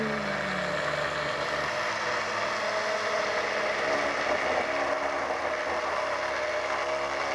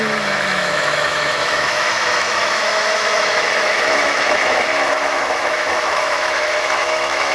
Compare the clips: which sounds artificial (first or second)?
second